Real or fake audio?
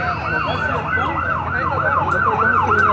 real